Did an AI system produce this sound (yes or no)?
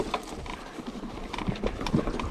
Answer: yes